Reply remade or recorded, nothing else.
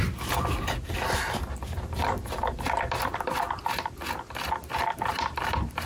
recorded